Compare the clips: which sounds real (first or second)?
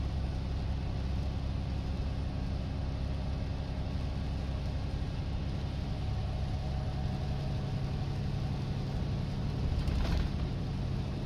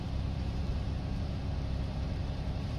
first